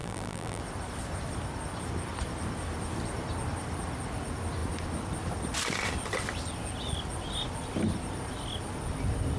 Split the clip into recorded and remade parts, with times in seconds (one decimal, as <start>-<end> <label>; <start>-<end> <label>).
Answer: 0.0-0.6 remade; 0.6-9.4 recorded